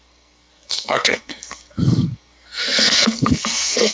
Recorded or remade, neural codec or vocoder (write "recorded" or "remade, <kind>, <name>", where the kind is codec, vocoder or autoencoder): remade, codec, SNAC